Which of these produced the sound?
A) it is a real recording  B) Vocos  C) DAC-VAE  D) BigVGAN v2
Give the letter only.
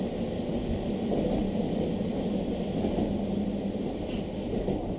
A